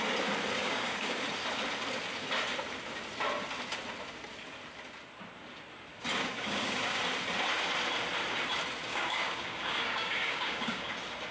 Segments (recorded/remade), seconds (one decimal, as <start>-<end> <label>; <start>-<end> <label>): 0.0-0.6 recorded; 0.6-1.2 remade; 1.2-6.2 recorded; 6.2-7.0 remade; 7.0-8.9 recorded; 8.9-10.9 remade; 10.9-11.3 recorded